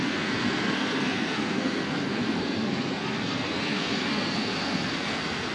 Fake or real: fake